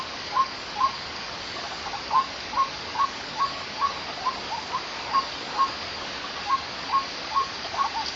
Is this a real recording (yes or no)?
no